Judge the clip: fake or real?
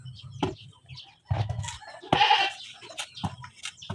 real